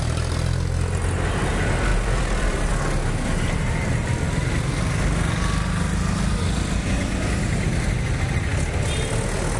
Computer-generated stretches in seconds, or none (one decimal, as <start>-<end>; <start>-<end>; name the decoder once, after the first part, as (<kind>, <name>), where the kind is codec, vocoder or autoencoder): 1.9-2.7 (vocoder, BigVGAN v2)